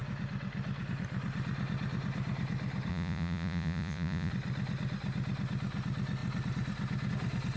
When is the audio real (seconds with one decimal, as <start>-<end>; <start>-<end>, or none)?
0.0-2.9; 4.3-7.6

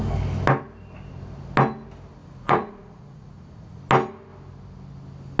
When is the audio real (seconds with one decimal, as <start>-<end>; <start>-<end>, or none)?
0.0-2.2; 3.8-5.4